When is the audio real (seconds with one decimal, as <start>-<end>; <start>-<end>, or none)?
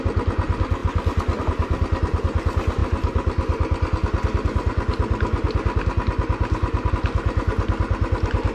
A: 0.0-8.5